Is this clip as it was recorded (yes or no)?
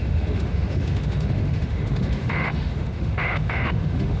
no